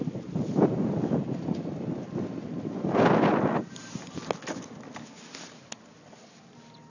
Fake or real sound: real